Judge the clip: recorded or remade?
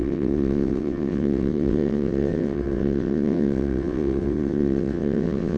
remade